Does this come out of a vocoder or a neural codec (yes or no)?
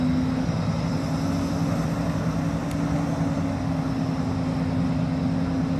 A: no